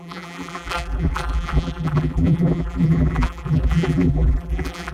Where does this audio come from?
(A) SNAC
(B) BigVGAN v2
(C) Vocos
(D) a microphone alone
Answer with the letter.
B